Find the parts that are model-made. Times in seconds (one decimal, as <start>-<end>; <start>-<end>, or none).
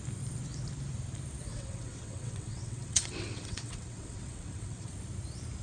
1.5-4.9